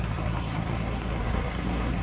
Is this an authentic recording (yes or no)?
no